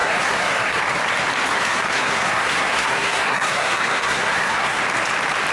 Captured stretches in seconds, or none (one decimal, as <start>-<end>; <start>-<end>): 0.8-1.5; 4.8-5.5